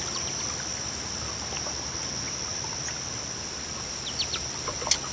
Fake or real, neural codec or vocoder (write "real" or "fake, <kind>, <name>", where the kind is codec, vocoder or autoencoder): real